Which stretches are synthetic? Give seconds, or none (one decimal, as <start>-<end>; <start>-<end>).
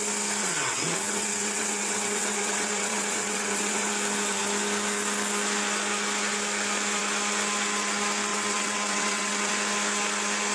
0.4-3.9; 8.3-9.5